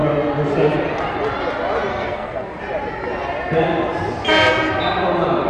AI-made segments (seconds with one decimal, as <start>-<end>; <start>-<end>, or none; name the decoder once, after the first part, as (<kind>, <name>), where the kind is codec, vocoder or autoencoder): 1.9-2.6 (codec, SNAC)